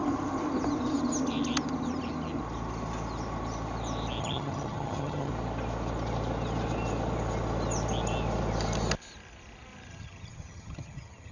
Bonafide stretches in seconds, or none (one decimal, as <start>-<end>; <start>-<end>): 0.0-4.2; 5.3-9.9